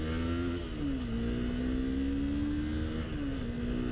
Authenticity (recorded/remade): recorded